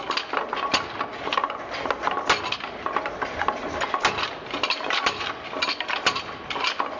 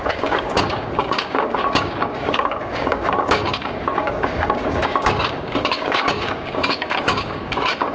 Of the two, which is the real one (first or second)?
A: first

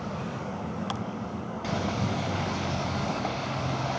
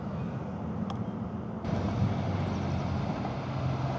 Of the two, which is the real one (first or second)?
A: second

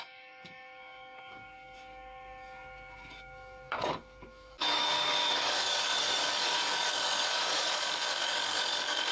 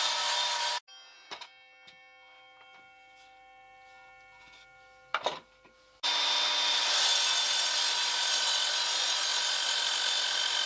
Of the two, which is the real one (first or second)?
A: second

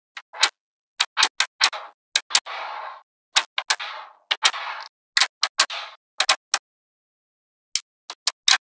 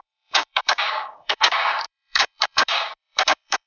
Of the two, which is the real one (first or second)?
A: first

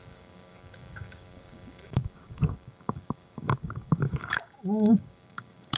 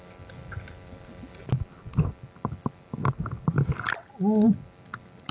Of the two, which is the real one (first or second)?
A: second